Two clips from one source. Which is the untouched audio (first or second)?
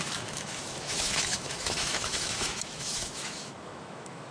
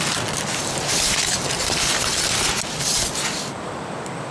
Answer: second